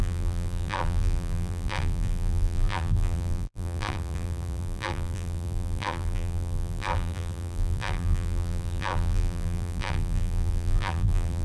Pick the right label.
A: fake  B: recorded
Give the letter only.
A